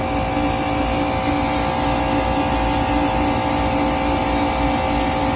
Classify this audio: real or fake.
real